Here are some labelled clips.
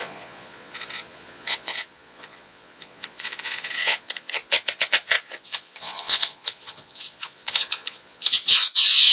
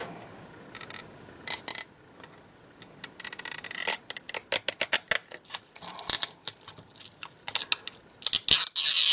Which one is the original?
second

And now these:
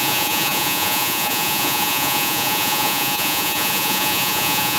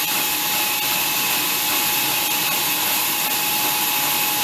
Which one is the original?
second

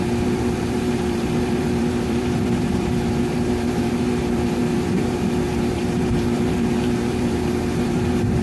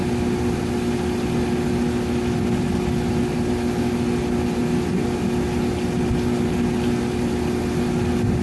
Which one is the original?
second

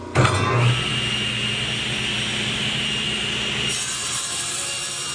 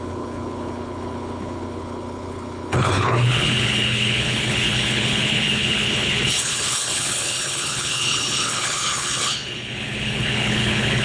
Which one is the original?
first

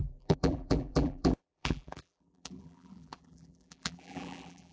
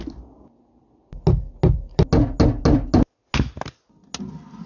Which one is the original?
second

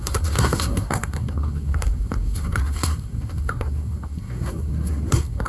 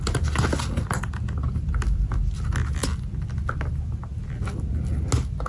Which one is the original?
second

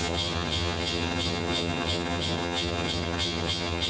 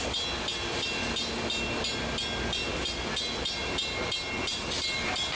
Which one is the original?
second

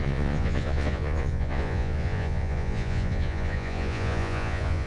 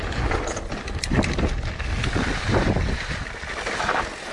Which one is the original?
second